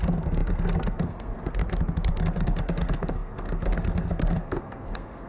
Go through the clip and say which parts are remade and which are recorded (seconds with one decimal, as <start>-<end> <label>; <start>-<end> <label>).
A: 0.0-1.6 remade; 1.6-2.1 recorded; 2.1-5.3 remade